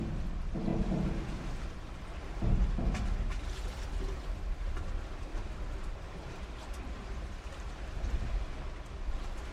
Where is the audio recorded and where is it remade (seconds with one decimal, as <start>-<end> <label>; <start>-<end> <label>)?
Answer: 0.0-5.3 recorded; 5.3-8.3 remade; 8.3-9.5 recorded